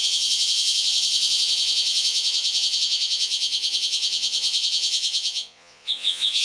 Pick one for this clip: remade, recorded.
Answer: remade